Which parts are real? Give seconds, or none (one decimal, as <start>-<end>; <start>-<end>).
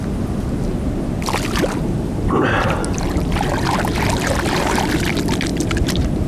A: 0.0-5.5